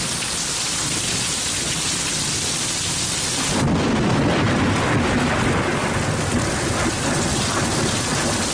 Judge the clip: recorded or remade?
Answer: recorded